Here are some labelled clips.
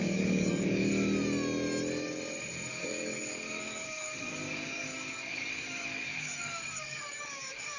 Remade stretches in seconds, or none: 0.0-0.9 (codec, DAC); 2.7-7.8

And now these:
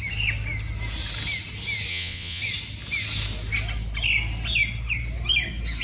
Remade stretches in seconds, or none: 1.9-2.4 (vocoder, WaveNeXt)

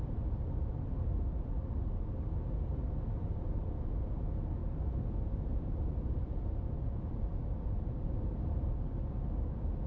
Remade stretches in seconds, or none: 4.6-8.7 (vocoder, BigVGAN v2)

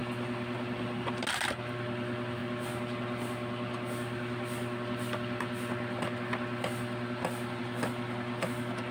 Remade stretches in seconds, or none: none

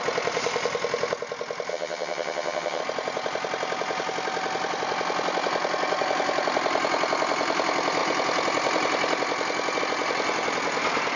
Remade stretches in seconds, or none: 1.7-2.8 (vocoder, HiFi-GAN)

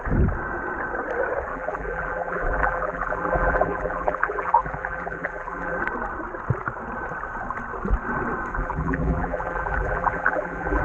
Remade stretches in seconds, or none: 1.5-5.8 (vocoder, BigVGAN v2); 8.5-10.8